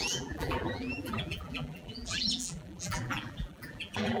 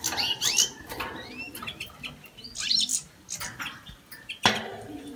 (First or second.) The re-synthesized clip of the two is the first